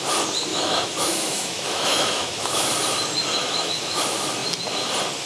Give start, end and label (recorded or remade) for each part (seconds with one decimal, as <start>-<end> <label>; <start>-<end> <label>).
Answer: 0.0-0.5 recorded; 0.5-2.7 remade; 2.7-3.4 recorded; 3.4-4.0 remade; 4.0-5.3 recorded